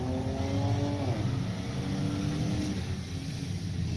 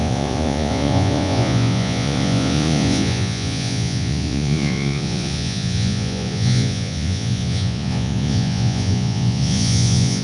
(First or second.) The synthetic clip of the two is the second